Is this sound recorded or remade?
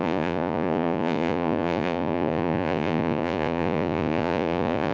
remade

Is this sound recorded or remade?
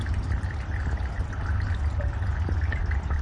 recorded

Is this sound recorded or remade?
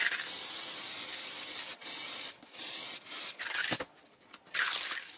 recorded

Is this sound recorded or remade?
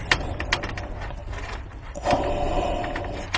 recorded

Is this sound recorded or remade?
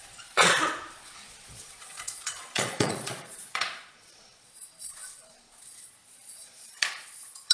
remade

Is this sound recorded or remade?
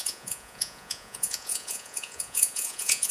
remade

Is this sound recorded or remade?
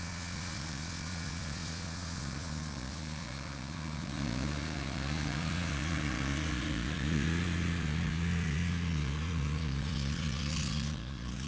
remade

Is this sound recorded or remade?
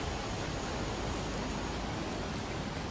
recorded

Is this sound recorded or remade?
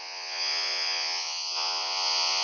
remade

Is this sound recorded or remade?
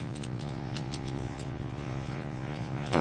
remade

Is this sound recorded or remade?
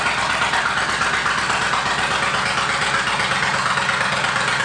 recorded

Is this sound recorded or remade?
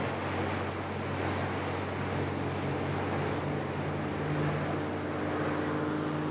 recorded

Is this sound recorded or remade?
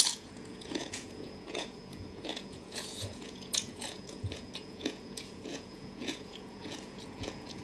remade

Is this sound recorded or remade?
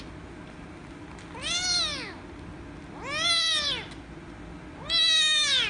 recorded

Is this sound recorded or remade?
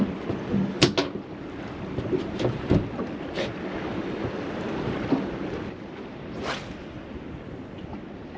recorded